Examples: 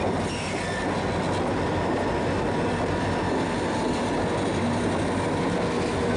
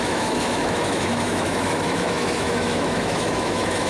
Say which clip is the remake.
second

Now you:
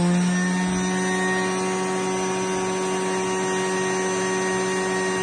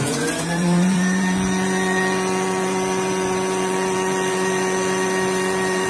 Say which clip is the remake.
second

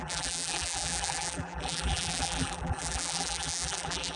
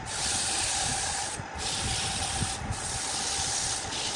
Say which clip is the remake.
first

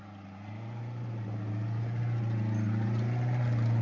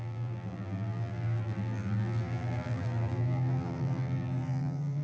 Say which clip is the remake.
second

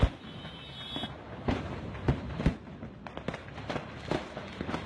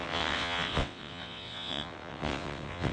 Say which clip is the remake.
second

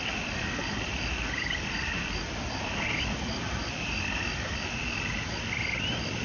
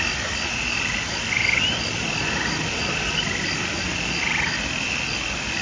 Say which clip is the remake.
first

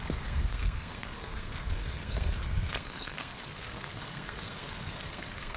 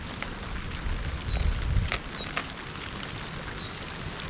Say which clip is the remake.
first